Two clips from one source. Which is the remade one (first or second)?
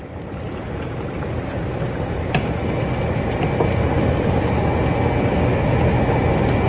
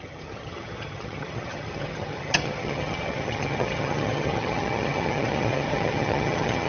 second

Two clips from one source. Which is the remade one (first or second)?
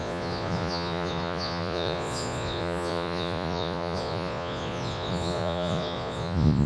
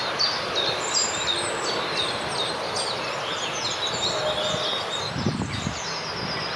first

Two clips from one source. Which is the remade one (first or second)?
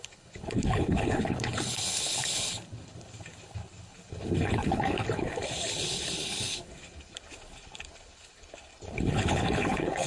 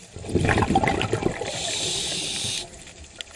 first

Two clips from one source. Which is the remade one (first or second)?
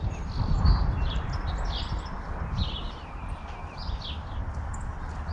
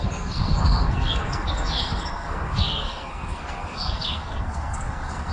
second